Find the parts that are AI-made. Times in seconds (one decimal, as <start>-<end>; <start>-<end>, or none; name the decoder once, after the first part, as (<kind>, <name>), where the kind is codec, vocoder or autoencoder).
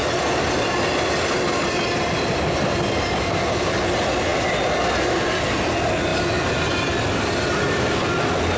none